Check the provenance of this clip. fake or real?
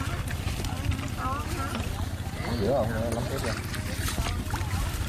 real